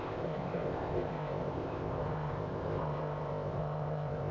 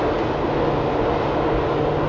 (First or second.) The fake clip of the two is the first